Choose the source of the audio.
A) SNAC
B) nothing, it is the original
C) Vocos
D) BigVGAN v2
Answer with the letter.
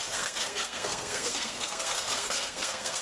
A